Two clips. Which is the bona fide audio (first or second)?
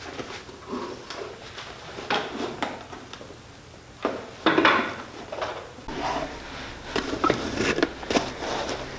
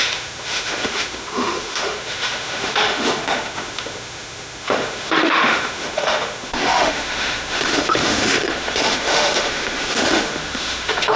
first